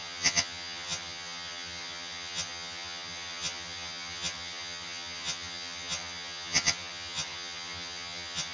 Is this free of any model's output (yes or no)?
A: no